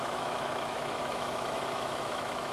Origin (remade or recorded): remade